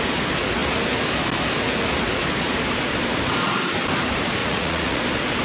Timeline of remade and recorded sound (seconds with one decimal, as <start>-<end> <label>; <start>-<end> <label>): 0.0-4.4 recorded; 4.4-5.0 remade; 5.0-5.4 recorded